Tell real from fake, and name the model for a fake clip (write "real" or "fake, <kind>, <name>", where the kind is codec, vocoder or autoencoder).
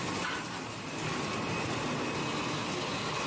real